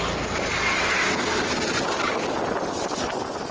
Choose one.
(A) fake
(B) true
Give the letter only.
B